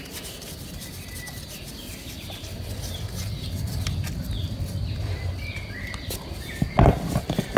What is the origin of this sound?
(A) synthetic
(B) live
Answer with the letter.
B